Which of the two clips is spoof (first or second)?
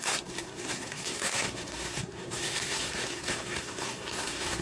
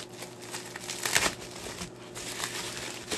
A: first